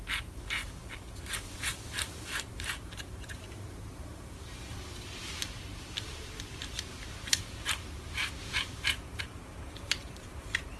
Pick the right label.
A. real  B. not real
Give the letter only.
B